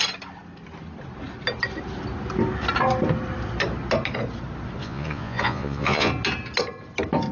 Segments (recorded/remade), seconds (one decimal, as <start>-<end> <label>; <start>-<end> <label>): 0.0-4.8 recorded; 4.8-6.1 remade; 6.1-7.3 recorded